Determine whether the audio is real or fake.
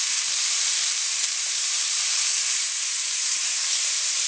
fake